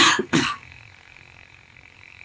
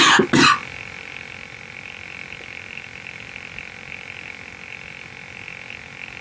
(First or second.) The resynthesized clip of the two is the first